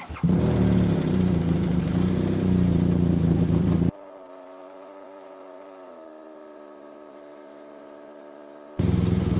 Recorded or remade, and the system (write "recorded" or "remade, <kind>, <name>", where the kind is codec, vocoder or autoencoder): remade, vocoder, BigVGAN v2